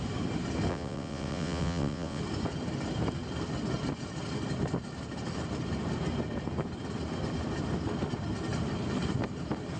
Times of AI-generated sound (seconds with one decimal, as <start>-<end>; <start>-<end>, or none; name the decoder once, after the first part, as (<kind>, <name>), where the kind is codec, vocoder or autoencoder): 0.7-2.2 (vocoder, WaveNeXt)